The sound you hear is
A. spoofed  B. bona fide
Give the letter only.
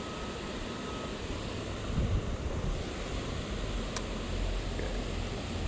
B